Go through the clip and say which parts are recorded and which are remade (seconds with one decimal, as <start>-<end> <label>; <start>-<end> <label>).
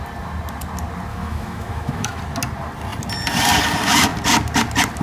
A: 0.0-1.1 recorded; 1.1-2.2 remade; 2.2-5.0 recorded